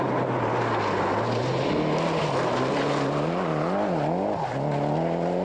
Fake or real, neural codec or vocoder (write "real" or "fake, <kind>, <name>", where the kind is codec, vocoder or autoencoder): real